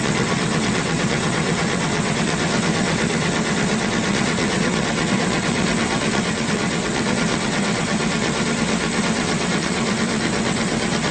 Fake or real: fake